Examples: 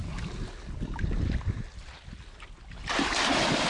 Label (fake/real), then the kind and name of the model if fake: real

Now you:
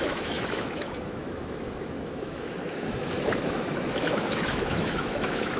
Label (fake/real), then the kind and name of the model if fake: fake, autoencoder, DAC-VAE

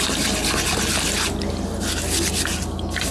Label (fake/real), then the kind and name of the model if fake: real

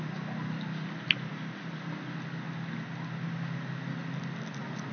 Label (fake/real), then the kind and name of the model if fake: real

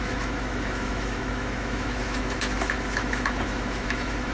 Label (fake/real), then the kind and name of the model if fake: fake, autoencoder, DAC-VAE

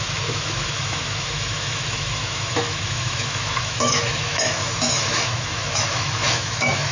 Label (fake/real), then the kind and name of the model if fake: fake, autoencoder, DAC-VAE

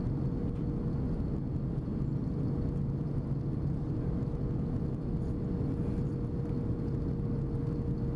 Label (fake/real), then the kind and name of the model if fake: real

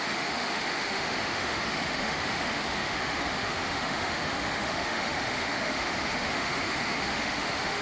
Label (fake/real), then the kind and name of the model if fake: fake, autoencoder, DAC-VAE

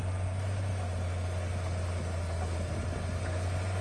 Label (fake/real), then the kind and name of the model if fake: real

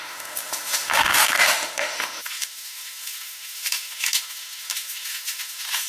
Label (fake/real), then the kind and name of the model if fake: fake, autoencoder, DAC-VAE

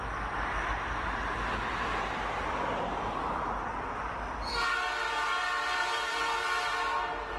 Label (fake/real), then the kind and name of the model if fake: real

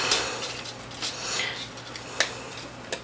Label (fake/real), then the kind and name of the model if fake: real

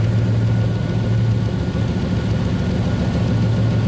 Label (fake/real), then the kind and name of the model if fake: real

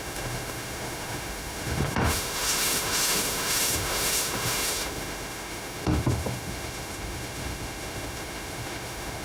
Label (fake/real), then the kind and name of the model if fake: fake, autoencoder, DAC-VAE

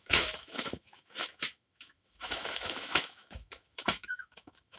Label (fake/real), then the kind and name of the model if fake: fake, autoencoder, DAC-VAE